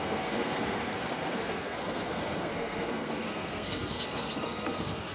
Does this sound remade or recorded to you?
remade